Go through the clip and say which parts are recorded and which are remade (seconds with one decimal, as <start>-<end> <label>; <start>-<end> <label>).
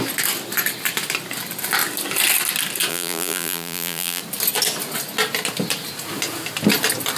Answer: 0.0-2.9 recorded; 2.9-4.2 remade; 4.2-7.2 recorded